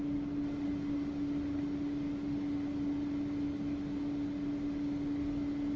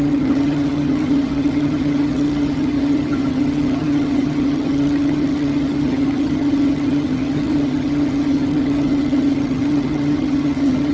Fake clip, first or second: second